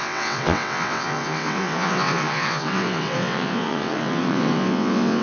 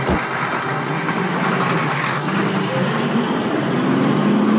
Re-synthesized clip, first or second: first